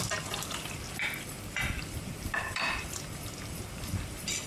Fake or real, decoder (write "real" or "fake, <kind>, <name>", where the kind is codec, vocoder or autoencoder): fake, vocoder, BigVGAN v2